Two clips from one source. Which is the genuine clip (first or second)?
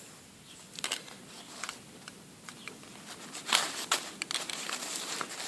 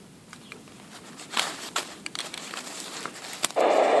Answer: first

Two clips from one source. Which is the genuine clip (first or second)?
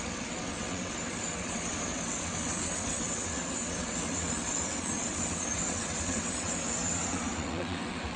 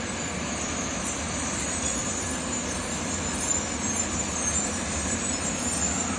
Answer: second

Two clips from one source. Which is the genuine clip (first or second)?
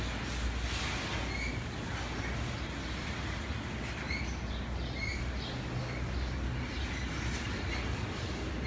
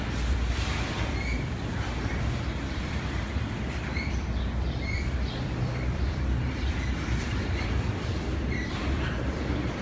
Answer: first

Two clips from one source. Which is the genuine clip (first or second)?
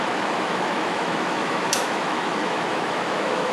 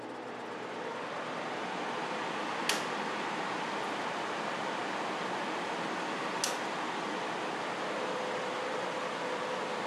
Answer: second